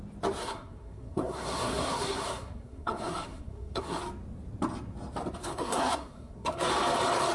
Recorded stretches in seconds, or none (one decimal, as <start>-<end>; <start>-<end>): 0.0-0.4; 4.0-5.4; 6.7-7.3